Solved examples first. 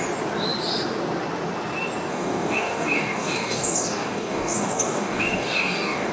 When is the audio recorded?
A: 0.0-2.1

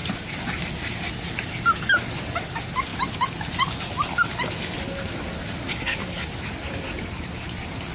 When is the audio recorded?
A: 0.0-7.9

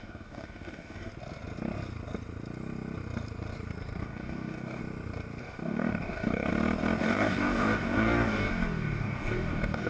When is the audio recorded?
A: 1.1-4.0; 4.8-5.4; 6.5-7.0

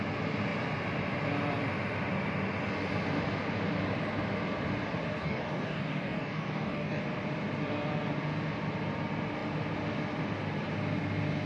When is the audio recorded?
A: 0.0-5.2; 7.0-11.5

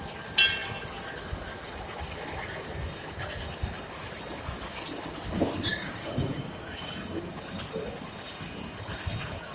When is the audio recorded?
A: 0.0-5.7; 7.3-9.5